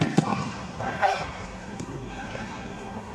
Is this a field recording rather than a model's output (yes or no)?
no